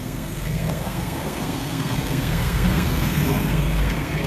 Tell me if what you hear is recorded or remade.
remade